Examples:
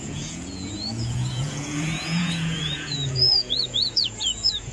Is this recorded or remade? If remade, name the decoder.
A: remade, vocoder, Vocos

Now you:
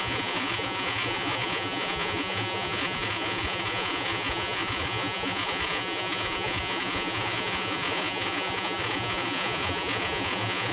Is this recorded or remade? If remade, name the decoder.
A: remade, vocoder, Vocos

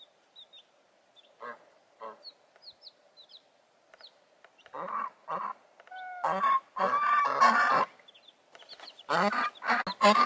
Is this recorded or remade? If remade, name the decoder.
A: recorded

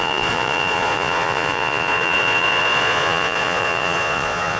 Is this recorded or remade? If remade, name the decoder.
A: remade, vocoder, Vocos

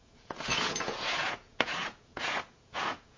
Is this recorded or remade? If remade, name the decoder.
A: remade, vocoder, Vocos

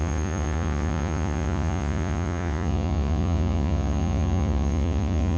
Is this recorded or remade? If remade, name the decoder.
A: remade, vocoder, Vocos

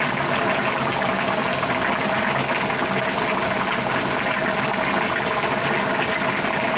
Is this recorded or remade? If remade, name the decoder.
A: recorded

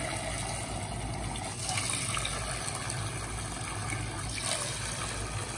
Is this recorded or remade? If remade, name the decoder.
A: recorded